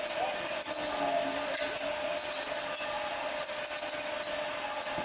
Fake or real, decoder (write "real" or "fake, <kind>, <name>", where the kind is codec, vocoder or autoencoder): real